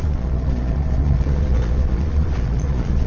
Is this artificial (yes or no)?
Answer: yes